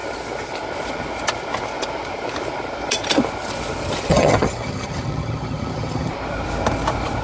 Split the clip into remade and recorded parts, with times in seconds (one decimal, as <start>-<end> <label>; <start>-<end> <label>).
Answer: 0.0-4.1 recorded; 4.1-6.1 remade; 6.1-7.2 recorded